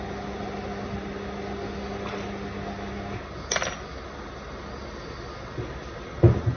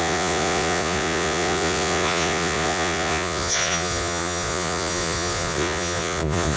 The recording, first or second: first